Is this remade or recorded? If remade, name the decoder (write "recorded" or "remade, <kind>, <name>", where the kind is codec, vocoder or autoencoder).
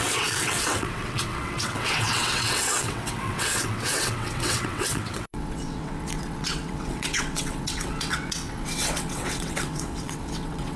remade, vocoder, WaveNeXt